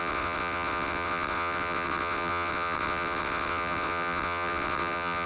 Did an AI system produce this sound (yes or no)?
yes